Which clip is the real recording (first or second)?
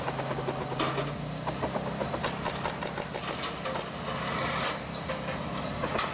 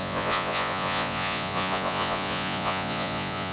first